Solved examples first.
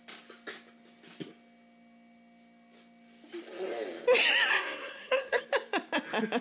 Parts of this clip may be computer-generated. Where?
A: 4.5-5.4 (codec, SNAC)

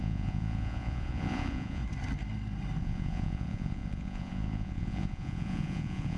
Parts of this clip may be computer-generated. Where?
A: 0.0-1.8 (vocoder, Vocos); 2.8-6.2

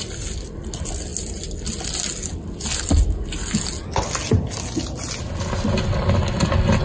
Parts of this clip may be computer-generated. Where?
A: none

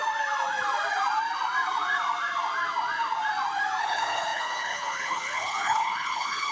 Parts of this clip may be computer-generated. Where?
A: 3.8-6.5 (codec, HILCodec)

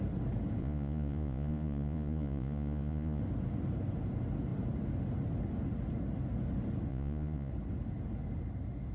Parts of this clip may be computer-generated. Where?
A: 0.6-3.2 (vocoder, Vocos); 6.9-7.5

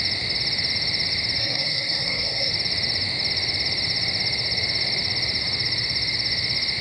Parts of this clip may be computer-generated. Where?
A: 1.4-2.5 (codec, SNAC)

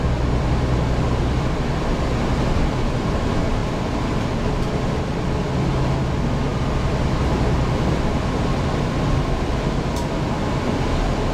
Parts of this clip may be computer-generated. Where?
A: none